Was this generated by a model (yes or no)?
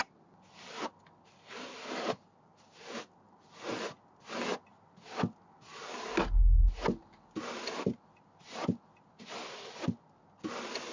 no